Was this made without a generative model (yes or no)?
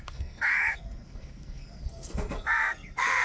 no